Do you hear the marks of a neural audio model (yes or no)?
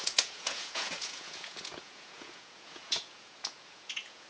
yes